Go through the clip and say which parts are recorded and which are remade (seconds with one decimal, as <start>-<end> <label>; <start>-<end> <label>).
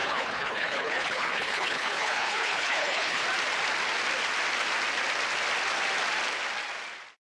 0.0-3.2 remade; 3.2-7.3 recorded